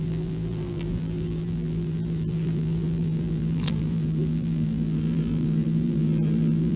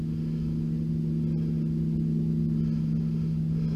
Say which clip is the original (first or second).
second